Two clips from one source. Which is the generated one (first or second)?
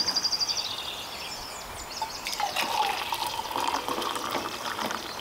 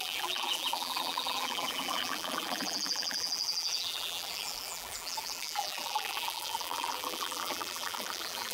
second